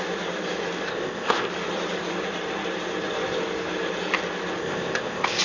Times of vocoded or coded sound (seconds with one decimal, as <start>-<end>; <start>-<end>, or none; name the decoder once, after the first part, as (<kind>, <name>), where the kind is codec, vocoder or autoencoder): 0.9-1.5 (codec, ZipCodec); 4.6-5.4